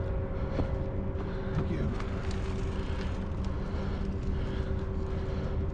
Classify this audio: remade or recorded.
recorded